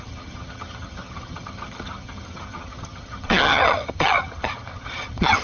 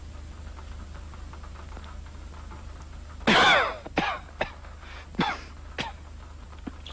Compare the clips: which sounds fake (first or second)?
first